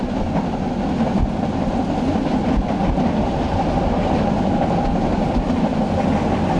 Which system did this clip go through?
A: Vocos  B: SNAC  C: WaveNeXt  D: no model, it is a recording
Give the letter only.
D